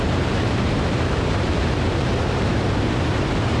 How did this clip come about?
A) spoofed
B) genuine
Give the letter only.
A